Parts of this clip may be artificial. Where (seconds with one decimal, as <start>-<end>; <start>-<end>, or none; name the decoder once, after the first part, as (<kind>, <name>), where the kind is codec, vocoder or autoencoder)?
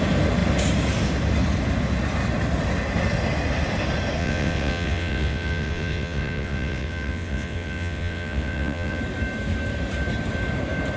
4.2-9.0 (vocoder, WaveNeXt)